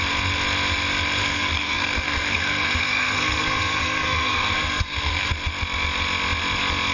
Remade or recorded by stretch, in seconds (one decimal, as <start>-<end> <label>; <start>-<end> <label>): 0.0-1.2 recorded; 1.2-5.3 remade; 5.3-6.9 recorded